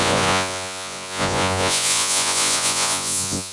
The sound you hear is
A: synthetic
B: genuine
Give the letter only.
A